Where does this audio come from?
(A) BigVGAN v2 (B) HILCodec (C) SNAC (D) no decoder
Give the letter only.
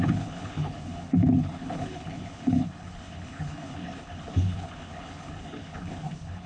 B